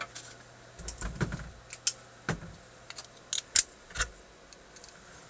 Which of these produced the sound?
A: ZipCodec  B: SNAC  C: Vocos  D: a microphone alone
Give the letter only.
D